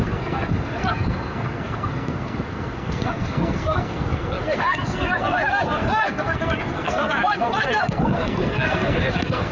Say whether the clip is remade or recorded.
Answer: remade